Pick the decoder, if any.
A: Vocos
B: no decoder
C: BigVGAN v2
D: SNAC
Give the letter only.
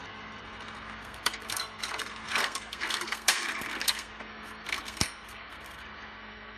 D